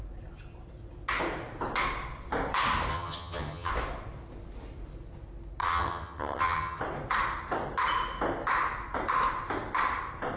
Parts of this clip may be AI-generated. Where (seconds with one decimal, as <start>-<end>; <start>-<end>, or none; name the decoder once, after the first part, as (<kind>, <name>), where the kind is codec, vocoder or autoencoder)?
2.9-3.7 (vocoder, HiFi-GAN); 5.6-6.8